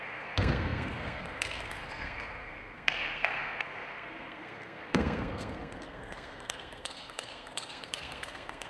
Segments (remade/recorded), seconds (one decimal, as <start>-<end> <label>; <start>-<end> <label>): 0.0-8.7 remade